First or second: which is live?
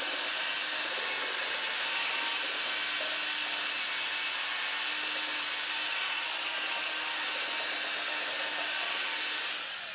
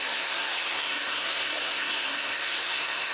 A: first